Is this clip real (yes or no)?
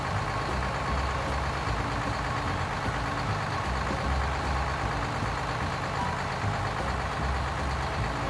yes